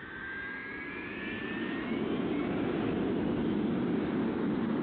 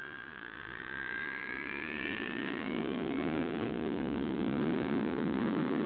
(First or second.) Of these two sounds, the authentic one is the first